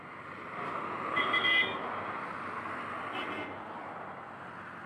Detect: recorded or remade recorded